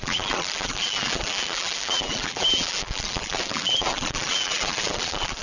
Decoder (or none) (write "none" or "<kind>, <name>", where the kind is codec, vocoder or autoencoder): vocoder, BigVGAN v2